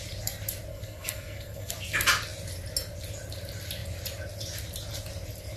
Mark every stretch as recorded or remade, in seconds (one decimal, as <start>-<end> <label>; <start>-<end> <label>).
0.0-0.7 recorded; 0.7-1.7 remade; 1.7-5.6 recorded